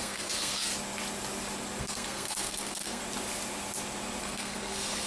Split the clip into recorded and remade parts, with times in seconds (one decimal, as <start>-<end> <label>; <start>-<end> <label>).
0.0-0.7 remade; 0.7-1.8 recorded; 1.8-3.0 remade; 3.0-4.2 recorded; 4.2-5.1 remade